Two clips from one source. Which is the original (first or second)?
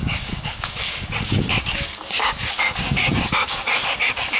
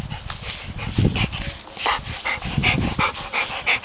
second